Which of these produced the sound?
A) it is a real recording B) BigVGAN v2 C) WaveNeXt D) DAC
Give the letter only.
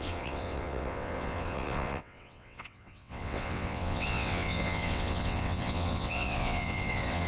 C